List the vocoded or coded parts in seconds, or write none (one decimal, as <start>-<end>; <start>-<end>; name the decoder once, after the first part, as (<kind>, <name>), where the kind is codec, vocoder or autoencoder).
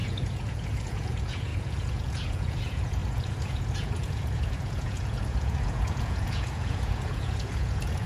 0.0-8.1 (vocoder, Vocos)